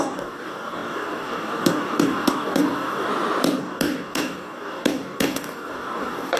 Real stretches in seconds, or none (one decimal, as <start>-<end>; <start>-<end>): 3.1-3.6